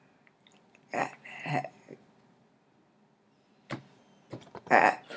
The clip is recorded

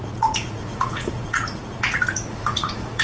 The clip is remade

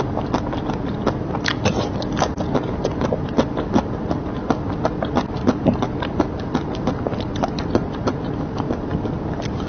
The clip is remade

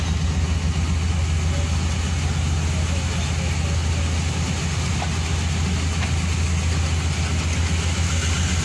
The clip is recorded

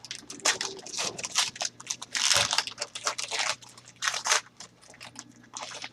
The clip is remade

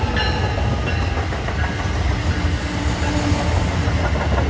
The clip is recorded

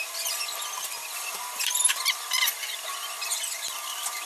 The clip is recorded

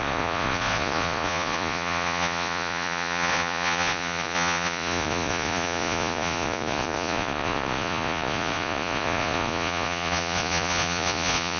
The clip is remade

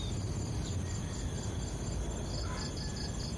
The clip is recorded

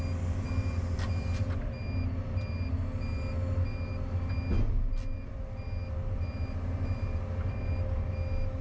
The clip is recorded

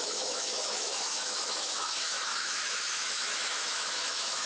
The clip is remade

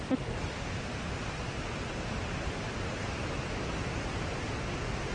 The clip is recorded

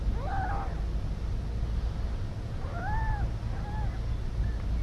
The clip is recorded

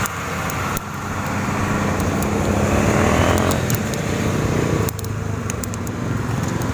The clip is recorded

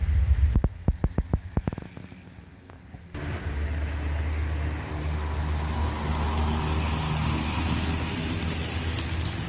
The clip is recorded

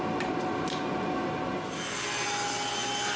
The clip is recorded